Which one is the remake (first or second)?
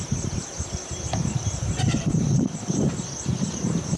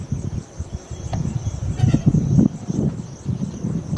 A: first